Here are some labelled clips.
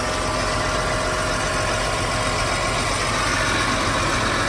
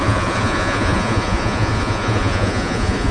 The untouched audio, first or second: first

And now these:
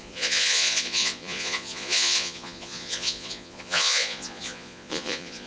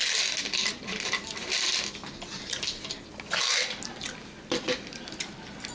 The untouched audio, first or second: second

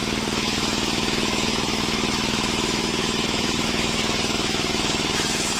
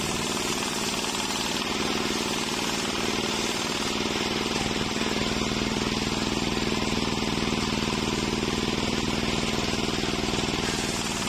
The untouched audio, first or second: second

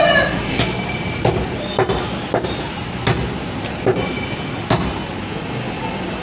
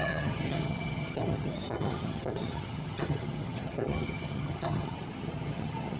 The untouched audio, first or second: first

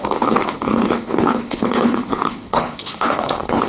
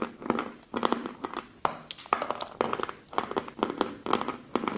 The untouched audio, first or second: second